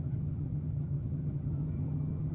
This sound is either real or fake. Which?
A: fake